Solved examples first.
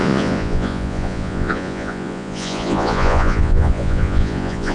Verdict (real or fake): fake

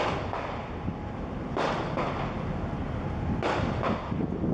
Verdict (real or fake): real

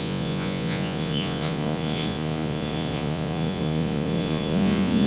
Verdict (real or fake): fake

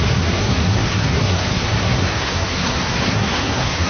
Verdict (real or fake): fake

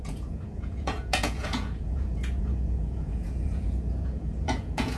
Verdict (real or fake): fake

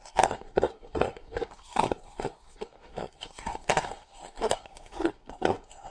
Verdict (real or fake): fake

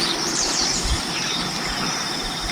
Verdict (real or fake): fake